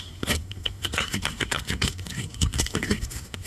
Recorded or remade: remade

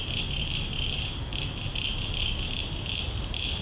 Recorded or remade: recorded